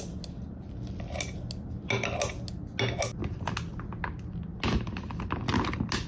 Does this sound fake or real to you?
real